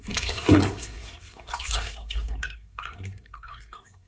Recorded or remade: remade